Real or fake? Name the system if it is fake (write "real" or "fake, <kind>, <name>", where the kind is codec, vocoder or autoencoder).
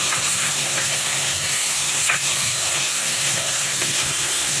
fake, codec, SNAC